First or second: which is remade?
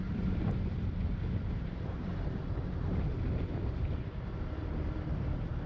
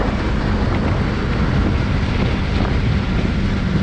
first